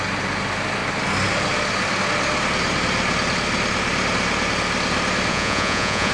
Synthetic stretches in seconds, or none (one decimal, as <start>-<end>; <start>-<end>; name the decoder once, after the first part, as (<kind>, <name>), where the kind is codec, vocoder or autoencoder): 5.3-6.1 (vocoder, Vocos)